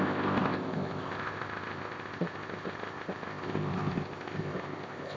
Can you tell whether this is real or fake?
fake